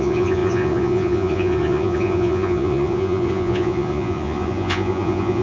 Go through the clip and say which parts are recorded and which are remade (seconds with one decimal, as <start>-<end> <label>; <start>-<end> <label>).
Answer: 0.0-5.4 remade